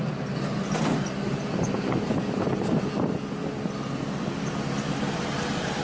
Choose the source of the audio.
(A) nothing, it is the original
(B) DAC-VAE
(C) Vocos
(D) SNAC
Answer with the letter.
A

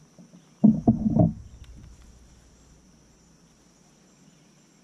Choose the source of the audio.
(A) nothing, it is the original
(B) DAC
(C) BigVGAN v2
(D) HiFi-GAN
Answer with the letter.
A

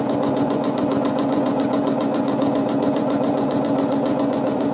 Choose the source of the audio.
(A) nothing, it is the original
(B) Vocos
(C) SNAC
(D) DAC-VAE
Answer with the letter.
B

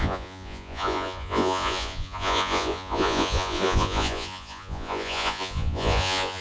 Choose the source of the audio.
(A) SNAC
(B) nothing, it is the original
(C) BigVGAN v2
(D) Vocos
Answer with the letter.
D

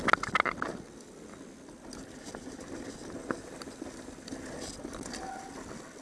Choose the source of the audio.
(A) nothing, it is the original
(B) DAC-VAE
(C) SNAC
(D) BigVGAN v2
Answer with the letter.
A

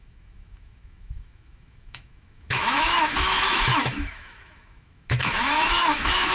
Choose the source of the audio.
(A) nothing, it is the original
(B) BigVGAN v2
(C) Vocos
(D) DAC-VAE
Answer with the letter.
D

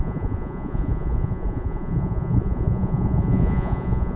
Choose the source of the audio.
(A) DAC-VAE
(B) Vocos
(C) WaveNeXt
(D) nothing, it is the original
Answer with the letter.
B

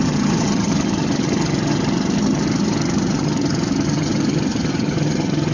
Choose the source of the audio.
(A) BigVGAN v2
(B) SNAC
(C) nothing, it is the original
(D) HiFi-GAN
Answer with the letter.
D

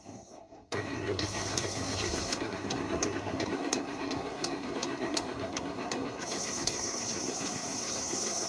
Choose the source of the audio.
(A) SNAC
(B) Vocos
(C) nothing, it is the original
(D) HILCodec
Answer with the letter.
A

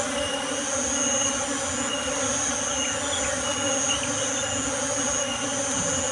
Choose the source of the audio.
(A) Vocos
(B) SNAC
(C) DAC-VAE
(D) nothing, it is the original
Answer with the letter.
D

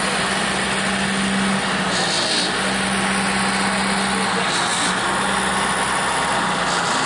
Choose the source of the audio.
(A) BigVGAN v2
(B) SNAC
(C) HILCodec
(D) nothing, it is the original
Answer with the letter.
D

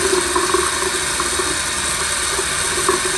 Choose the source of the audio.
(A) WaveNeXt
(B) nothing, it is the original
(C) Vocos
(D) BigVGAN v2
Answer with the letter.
B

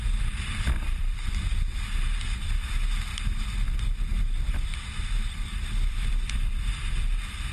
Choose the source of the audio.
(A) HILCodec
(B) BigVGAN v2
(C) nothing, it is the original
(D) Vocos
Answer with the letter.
B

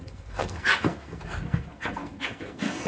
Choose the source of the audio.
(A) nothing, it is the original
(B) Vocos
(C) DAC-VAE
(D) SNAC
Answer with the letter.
D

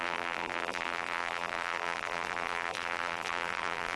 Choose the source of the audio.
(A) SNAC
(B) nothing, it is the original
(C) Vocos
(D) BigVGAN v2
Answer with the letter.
D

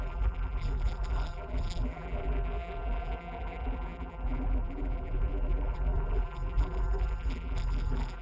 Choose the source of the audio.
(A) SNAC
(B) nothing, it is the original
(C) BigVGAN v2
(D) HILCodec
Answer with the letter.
C